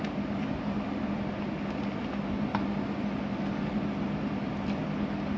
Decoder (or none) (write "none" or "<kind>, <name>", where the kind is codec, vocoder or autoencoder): none